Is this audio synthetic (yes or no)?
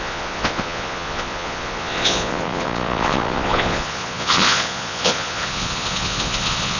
yes